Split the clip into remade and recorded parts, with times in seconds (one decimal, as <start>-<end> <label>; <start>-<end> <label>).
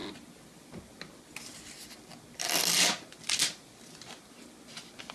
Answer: 0.0-5.1 recorded